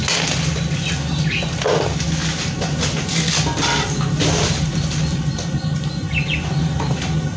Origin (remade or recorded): recorded